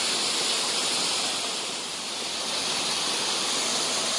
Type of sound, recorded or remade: recorded